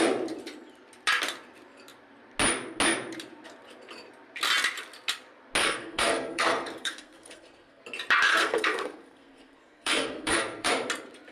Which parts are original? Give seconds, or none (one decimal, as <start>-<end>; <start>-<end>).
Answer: 0.0-5.6; 7.8-8.3; 10.7-11.3

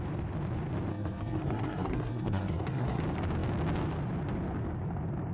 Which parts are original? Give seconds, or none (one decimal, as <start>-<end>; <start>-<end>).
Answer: 0.0-0.9; 3.0-5.3

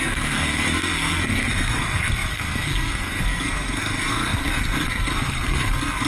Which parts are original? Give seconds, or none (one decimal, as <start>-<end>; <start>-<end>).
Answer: none

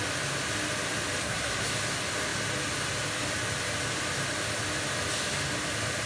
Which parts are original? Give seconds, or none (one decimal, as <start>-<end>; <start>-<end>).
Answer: 0.0-1.2; 1.7-6.1

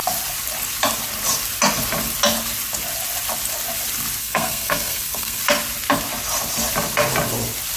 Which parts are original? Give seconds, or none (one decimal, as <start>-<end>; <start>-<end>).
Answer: 0.0-4.2; 5.4-7.8